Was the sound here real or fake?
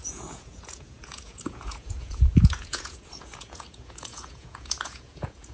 fake